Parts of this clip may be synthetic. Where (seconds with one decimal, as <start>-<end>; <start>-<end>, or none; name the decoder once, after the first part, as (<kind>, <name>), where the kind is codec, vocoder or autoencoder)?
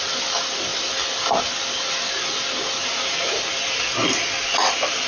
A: none